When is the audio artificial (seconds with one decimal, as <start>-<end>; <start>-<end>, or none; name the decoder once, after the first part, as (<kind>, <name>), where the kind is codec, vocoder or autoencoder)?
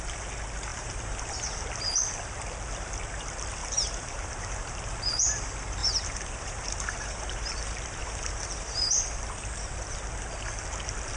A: 0.7-1.9 (vocoder, BigVGAN v2); 3.6-4.9; 5.8-9.0